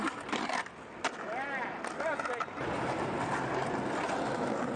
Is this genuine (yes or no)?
yes